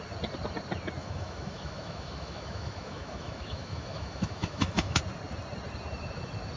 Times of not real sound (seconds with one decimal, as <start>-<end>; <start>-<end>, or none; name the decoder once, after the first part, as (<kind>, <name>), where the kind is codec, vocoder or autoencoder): 1.0-5.0 (autoencoder, DAC-VAE)